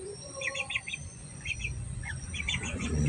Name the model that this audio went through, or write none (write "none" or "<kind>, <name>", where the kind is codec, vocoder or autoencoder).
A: vocoder, Vocos